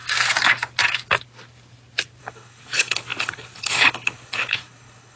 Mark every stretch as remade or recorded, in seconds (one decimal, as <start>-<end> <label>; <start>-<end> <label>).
0.0-2.2 recorded; 2.2-5.2 remade